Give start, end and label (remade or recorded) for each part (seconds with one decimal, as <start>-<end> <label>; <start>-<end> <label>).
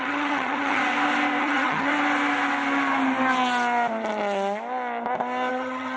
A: 0.0-0.8 remade; 0.8-1.4 recorded; 1.4-1.9 remade; 1.9-5.5 recorded; 5.5-6.0 remade